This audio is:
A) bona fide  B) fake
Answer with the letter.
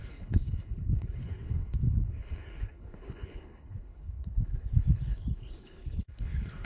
B